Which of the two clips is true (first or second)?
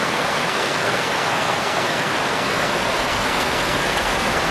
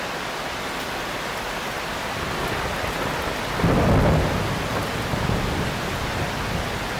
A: second